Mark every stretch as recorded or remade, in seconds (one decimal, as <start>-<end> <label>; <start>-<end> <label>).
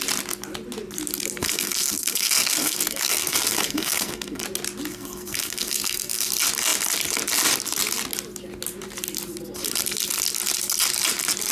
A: 0.0-1.4 recorded; 1.4-4.4 remade; 4.4-4.9 recorded; 4.9-6.3 remade; 6.3-11.5 recorded